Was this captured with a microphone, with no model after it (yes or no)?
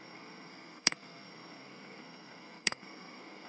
no